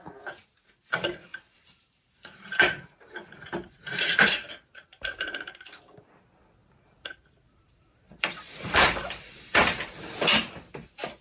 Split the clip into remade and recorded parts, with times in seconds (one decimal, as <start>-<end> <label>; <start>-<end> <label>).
0.0-1.3 recorded; 1.3-5.8 remade; 5.8-6.6 recorded; 6.6-10.1 remade; 10.1-11.2 recorded